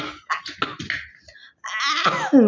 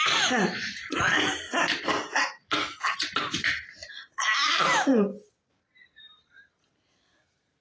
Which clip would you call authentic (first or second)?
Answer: first